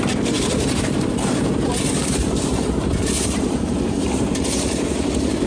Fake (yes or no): yes